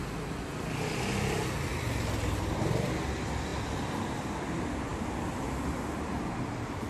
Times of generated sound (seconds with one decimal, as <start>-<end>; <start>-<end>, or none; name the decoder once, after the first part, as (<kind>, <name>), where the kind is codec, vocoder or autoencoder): 1.7-2.5 (vocoder, BigVGAN v2)